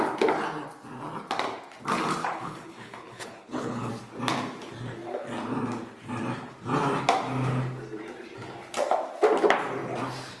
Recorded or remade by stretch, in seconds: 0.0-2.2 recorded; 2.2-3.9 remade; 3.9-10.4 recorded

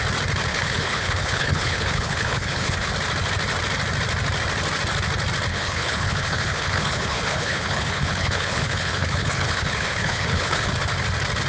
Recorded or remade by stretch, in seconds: 0.0-0.5 recorded; 0.5-2.9 remade; 2.9-5.5 recorded; 5.5-10.7 remade; 10.7-11.5 recorded